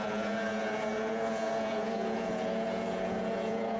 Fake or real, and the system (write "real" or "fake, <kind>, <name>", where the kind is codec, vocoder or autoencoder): fake, vocoder, Vocos